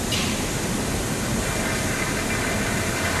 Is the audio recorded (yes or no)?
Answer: yes